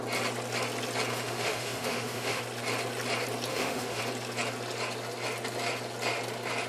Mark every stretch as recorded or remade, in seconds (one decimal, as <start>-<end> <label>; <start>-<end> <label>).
0.0-1.1 recorded; 1.1-2.4 remade; 2.4-3.5 recorded; 3.5-4.0 remade; 4.0-6.7 recorded